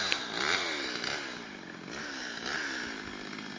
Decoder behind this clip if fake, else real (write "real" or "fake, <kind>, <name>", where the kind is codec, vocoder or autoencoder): real